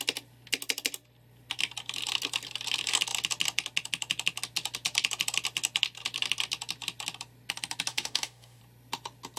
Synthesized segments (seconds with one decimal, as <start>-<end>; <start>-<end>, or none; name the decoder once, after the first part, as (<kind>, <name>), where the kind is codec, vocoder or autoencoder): 7.9-8.6 (autoencoder, DAC-VAE)